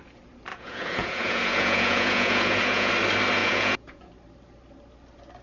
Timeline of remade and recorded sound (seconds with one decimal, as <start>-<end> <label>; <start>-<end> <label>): 0.0-0.5 recorded; 0.5-2.9 remade; 2.9-3.4 recorded; 3.4-4.1 remade; 4.1-5.4 recorded